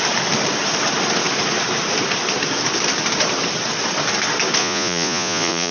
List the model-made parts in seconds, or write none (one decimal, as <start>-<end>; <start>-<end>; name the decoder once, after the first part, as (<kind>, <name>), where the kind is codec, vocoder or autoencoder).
4.6-5.7 (vocoder, Vocos)